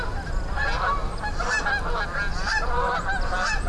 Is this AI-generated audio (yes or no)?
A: no